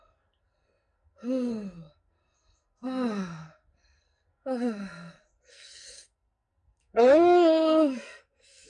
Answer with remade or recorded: remade